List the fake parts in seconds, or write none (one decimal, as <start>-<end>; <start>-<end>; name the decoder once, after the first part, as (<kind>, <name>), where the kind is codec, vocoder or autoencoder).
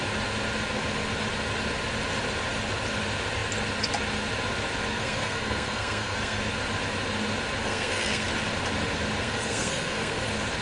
4.9-6.4 (codec, SNAC); 7.6-8.3; 9.2-10.2